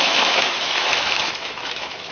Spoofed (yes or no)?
yes